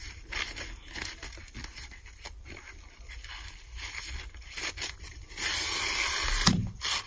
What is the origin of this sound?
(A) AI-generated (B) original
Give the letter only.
B